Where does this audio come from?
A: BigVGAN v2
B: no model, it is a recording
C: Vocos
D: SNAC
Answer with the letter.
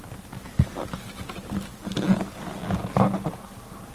B